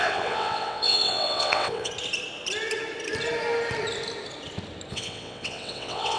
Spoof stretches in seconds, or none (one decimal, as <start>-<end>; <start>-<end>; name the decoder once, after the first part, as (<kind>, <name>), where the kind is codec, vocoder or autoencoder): 0.0-1.9 (vocoder, WaveNeXt); 4.9-6.2